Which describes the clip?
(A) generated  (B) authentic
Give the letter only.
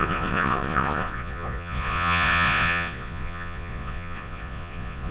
A